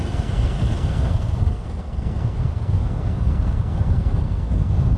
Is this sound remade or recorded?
remade